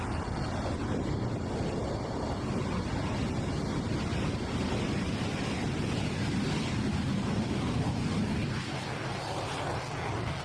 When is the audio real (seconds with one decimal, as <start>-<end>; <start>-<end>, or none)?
none